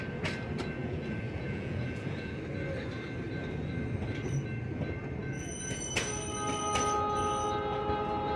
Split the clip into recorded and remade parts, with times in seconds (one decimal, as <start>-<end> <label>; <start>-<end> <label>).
0.0-0.8 recorded; 0.8-2.4 remade; 2.4-5.2 recorded; 5.2-5.8 remade; 5.8-8.4 recorded